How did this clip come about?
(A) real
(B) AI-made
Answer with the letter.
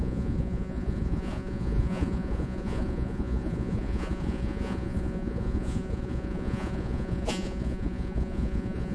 B